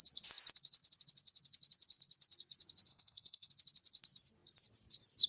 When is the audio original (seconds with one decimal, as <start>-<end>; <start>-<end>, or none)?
0.0-2.9; 3.5-5.3